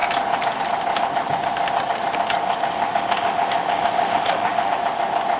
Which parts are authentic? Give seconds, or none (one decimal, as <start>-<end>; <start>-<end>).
0.0-2.7; 4.7-5.4